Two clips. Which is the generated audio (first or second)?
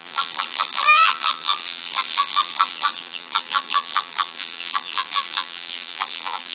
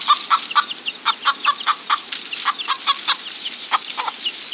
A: first